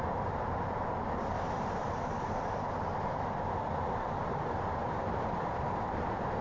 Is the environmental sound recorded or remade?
remade